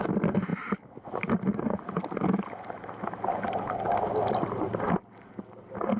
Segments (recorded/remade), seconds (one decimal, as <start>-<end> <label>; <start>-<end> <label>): 0.0-6.0 recorded